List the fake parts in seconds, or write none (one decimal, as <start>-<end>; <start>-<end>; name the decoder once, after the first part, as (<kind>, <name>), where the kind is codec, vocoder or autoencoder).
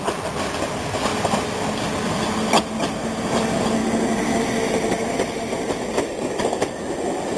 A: 0.0-7.4 (vocoder, BigVGAN v2)